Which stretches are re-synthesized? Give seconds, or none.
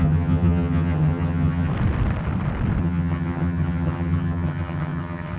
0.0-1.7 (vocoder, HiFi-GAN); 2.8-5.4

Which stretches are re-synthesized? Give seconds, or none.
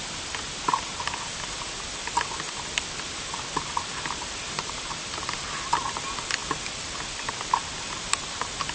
none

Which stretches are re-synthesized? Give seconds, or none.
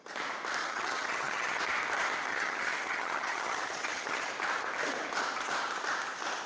0.6-1.6 (vocoder, HiFi-GAN); 2.3-4.3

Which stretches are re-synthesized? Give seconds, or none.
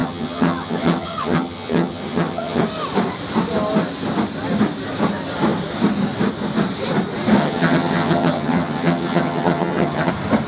0.0-2.6 (vocoder, HiFi-GAN); 7.4-10.1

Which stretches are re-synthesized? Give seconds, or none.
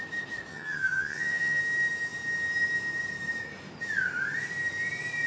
0.5-1.6 (vocoder, HiFi-GAN)